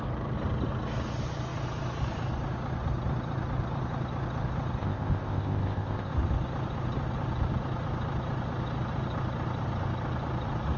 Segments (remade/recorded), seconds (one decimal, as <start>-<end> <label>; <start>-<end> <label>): 0.0-4.8 recorded; 4.8-6.1 remade; 6.1-10.8 recorded